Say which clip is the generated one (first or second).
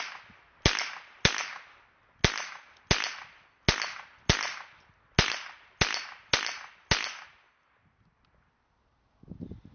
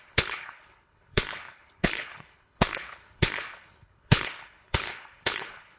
second